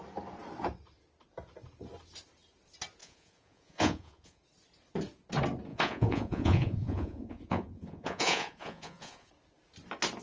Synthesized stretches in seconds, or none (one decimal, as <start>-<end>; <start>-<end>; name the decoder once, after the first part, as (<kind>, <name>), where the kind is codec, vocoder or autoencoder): 3.0-4.4 (vocoder, Vocos); 5.7-9.3